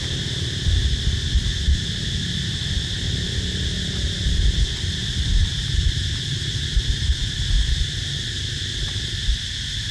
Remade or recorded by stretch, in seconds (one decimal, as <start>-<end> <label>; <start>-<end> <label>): 0.0-5.4 recorded; 5.4-6.8 remade; 6.8-9.9 recorded